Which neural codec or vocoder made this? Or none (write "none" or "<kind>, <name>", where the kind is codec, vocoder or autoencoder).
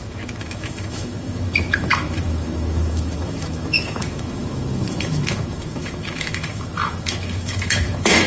autoencoder, DAC-VAE